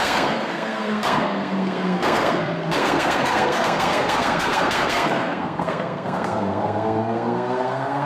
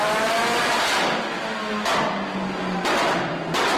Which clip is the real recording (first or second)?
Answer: second